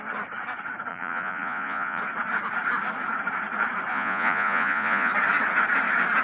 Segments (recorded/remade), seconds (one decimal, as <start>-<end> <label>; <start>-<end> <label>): 0.0-0.9 recorded; 0.9-2.0 remade; 2.0-3.9 recorded; 3.9-5.1 remade; 5.1-6.2 recorded